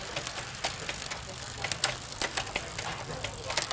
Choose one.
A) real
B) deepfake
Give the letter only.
A